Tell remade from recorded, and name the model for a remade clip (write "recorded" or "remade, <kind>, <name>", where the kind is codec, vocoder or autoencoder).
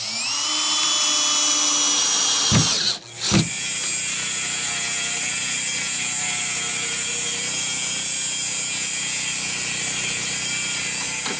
recorded